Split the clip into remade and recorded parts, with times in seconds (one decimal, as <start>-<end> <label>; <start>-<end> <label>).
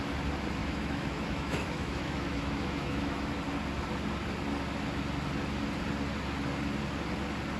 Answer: 0.0-0.6 recorded; 0.6-3.3 remade; 3.3-7.6 recorded